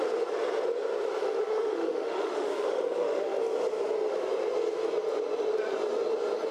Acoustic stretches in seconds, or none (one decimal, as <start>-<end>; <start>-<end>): 0.0-1.2; 3.4-6.5